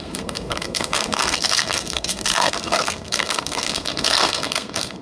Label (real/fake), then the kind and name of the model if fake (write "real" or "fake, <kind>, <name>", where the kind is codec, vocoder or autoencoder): fake, codec, SNAC